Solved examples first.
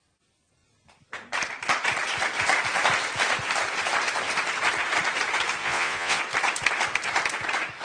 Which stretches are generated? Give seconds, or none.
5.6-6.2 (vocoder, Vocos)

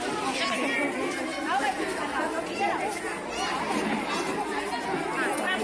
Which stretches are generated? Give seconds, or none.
none

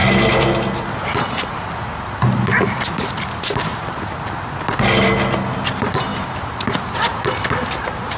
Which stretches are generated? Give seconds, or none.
none